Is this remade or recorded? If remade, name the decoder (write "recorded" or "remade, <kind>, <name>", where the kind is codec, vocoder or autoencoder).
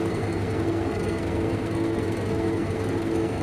remade, codec, SNAC